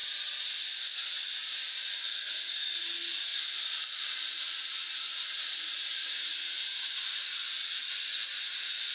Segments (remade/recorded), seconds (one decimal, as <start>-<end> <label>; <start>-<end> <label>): 0.0-3.3 recorded; 3.3-7.0 remade; 7.0-8.9 recorded

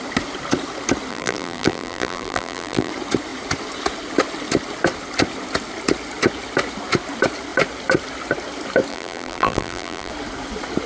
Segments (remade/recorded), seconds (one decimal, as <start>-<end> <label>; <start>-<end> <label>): 0.0-1.1 recorded; 1.1-2.9 remade; 2.9-8.9 recorded; 8.9-10.1 remade; 10.1-10.9 recorded

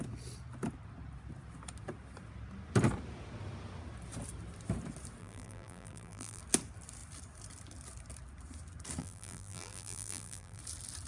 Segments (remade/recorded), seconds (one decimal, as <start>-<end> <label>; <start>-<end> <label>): 0.0-5.2 recorded; 5.2-6.4 remade; 6.4-9.0 recorded; 9.0-10.6 remade; 10.6-11.1 recorded

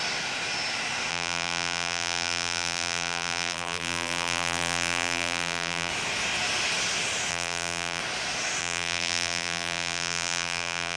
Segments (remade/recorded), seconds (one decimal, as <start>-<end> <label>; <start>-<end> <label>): 0.0-1.1 recorded; 1.1-5.9 remade; 5.9-7.3 recorded; 7.3-8.0 remade; 8.0-8.6 recorded; 8.6-11.0 remade

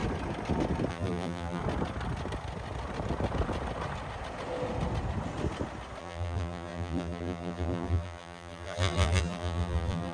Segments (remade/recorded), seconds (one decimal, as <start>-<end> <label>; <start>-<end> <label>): 0.0-0.9 recorded; 0.9-1.6 remade; 1.6-6.0 recorded; 6.0-10.1 remade

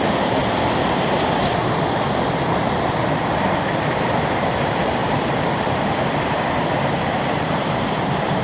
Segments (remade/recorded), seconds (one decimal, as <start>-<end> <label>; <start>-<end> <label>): 0.0-0.4 remade; 0.4-4.4 recorded; 4.4-8.4 remade